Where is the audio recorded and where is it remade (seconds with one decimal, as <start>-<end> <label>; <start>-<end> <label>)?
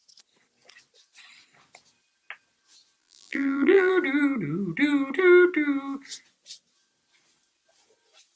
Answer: 0.0-3.0 recorded; 3.0-3.9 remade; 3.9-8.4 recorded